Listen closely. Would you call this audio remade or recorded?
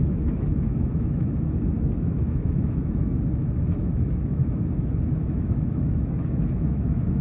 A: remade